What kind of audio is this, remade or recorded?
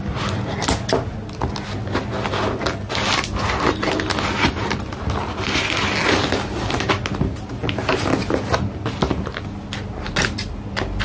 recorded